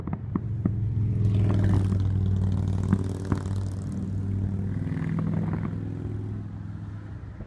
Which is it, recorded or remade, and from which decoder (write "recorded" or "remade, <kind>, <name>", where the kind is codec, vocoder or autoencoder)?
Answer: recorded